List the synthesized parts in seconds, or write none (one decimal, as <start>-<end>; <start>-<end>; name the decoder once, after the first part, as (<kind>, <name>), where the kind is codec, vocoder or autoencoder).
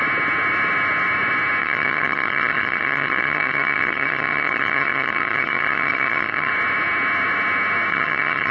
1.6-6.5 (vocoder, HiFi-GAN); 7.9-8.5